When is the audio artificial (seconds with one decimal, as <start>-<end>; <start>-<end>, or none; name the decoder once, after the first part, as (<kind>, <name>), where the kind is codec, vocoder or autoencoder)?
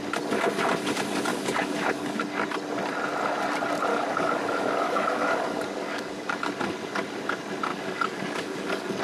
1.3-2.2 (codec, DAC); 3.9-6.5; 7.7-9.0